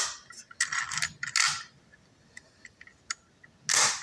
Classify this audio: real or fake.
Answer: real